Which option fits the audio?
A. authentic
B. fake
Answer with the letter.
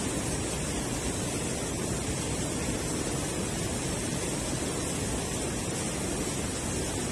A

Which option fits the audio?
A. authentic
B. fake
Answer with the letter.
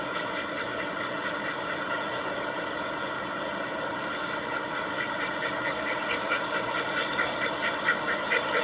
A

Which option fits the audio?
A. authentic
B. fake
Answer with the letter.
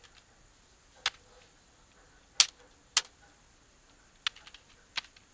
A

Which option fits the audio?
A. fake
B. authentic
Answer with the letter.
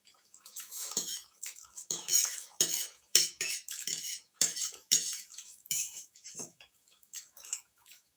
A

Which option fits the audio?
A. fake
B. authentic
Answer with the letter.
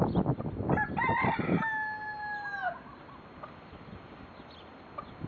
B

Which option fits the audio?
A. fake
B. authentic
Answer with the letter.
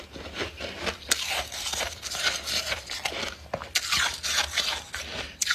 B